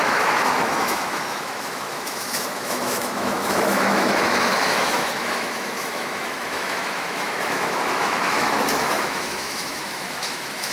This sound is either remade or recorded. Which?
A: remade